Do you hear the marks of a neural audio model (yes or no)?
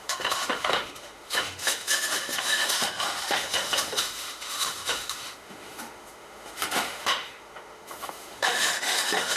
yes